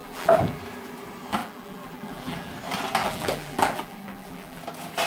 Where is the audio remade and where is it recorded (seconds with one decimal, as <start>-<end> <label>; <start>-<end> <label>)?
0.0-0.6 remade; 0.6-1.4 recorded; 1.4-2.5 remade; 2.5-3.0 recorded; 3.0-4.6 remade; 4.6-5.1 recorded